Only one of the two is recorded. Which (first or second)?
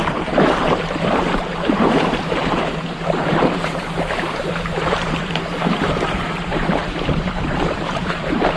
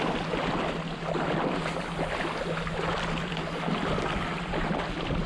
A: second